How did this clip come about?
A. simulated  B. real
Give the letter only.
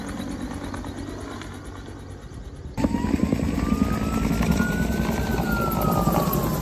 B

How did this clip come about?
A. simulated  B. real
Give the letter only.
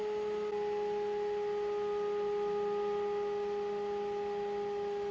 B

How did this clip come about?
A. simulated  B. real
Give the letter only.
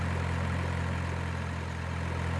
B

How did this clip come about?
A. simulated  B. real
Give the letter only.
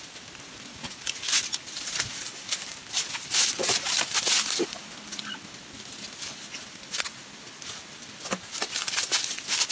B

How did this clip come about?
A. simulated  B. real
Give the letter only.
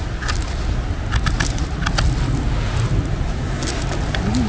B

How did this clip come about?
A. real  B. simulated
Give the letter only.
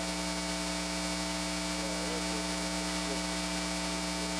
A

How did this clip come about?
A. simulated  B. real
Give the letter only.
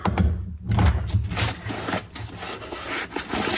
B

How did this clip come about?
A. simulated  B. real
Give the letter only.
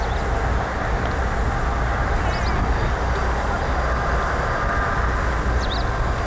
B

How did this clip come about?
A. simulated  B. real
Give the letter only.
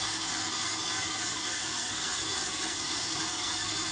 A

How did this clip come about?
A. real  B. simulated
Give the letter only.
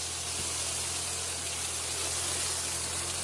A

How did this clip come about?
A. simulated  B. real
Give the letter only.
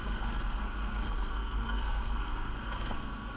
A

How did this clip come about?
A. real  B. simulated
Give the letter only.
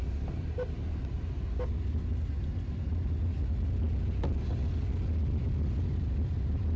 A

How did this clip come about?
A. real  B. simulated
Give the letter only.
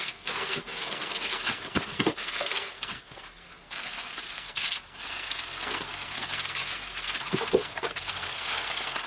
B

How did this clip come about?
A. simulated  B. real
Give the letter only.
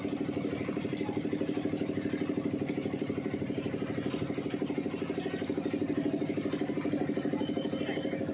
B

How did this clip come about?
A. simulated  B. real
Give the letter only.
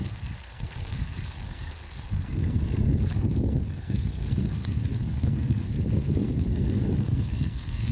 A